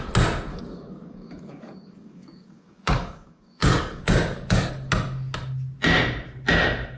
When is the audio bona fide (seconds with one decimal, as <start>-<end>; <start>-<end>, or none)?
0.0-0.5; 4.7-7.0